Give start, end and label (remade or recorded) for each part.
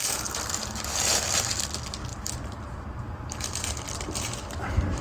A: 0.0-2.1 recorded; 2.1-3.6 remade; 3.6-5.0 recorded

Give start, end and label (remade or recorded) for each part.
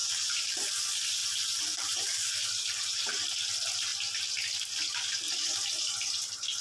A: 0.0-0.7 remade; 0.7-1.2 recorded; 1.2-3.3 remade; 3.3-6.6 recorded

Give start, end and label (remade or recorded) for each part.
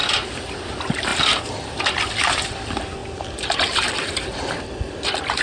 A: 0.0-0.6 remade; 0.6-1.1 recorded; 1.1-1.8 remade; 1.8-3.0 recorded; 3.0-4.5 remade; 4.5-5.4 recorded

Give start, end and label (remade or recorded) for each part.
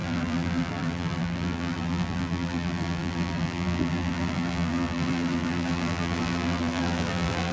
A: 0.0-7.5 remade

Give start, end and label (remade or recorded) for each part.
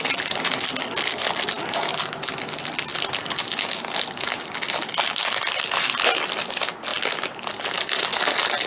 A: 0.0-8.7 recorded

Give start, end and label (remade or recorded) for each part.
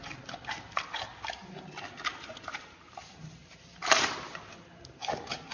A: 0.0-2.1 recorded; 2.1-5.0 remade; 5.0-5.5 recorded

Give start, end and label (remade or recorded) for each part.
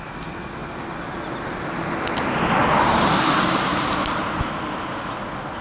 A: 0.0-2.6 recorded; 2.6-4.5 remade; 4.5-5.6 recorded